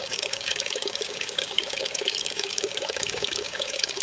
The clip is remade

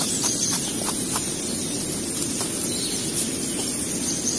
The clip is recorded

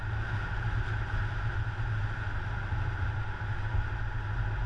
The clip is recorded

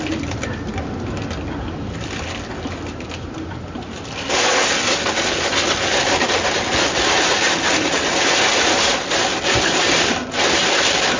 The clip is recorded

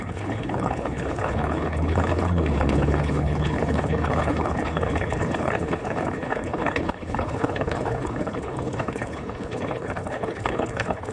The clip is remade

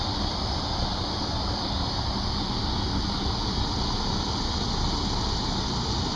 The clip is recorded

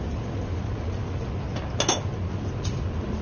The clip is recorded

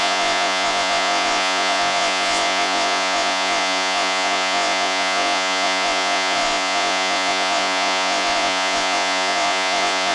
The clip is remade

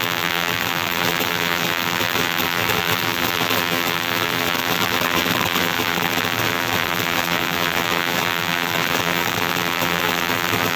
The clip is remade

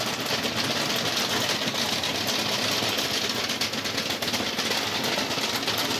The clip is recorded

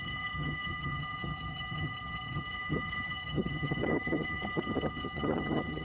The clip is remade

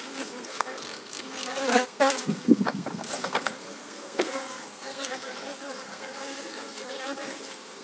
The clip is remade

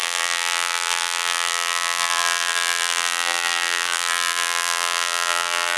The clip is remade